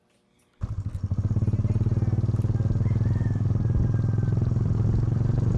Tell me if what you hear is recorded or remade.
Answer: recorded